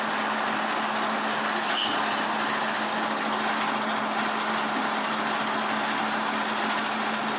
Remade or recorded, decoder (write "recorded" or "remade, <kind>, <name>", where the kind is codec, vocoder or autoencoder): recorded